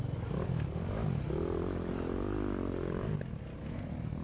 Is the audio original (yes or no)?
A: yes